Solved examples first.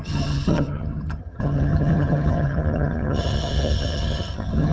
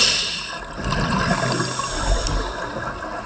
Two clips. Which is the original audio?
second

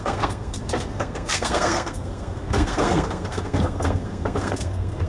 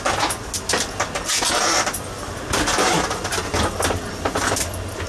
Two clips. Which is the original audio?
second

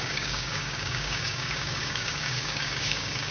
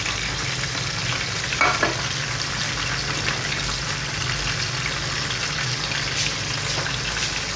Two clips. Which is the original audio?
second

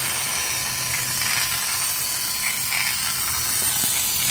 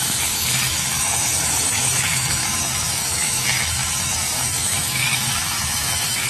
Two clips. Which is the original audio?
first